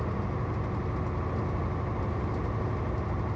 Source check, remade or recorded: recorded